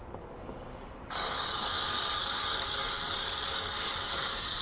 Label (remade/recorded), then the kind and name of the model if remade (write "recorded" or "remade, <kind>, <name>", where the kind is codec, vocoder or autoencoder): remade, codec, DAC